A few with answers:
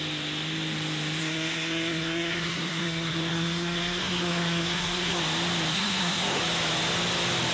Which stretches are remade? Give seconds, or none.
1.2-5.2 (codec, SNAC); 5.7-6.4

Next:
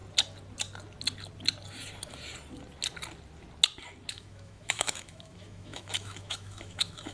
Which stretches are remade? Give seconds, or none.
4.1-7.1 (autoencoder, DAC-VAE)